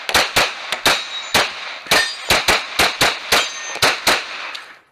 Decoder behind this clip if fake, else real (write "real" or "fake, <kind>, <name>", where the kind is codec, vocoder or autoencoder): real